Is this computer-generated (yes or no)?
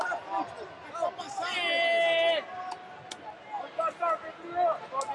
no